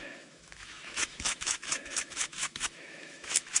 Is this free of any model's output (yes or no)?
no